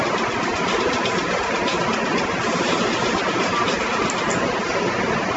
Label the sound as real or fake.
real